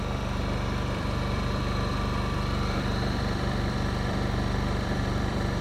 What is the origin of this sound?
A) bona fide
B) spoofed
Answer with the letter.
B